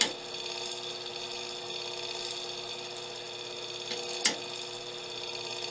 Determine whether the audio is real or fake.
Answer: real